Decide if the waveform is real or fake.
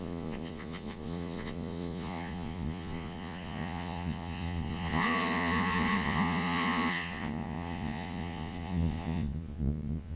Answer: fake